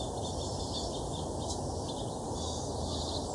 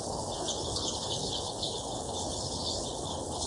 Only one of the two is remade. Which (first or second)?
second